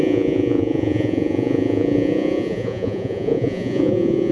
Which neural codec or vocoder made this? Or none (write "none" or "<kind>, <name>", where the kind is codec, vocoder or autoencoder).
vocoder, Vocos